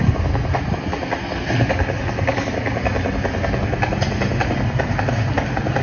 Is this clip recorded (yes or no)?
yes